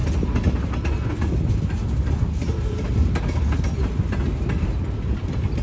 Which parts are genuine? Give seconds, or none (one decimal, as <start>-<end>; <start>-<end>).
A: 0.0-5.6